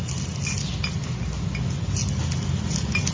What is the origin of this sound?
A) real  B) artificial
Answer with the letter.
A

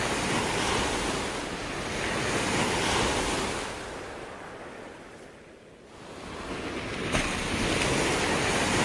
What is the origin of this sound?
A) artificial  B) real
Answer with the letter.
B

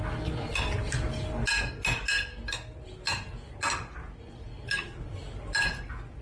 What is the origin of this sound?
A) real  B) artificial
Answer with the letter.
A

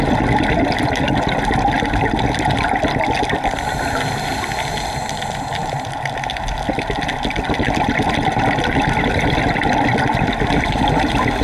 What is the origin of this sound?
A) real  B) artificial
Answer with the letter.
A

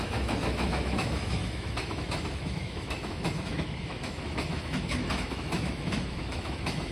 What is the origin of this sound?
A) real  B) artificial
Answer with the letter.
B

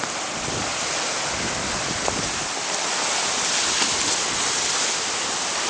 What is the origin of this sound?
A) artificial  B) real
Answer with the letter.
B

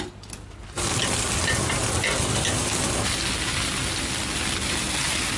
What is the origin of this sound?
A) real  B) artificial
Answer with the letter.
A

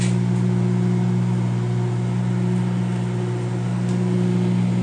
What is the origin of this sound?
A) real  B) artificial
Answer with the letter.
A